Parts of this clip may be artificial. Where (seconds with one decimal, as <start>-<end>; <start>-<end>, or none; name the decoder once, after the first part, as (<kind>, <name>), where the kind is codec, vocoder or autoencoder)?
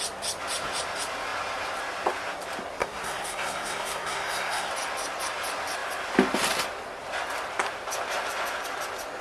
2.8-4.7 (codec, SNAC)